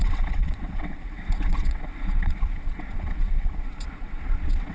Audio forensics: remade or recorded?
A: remade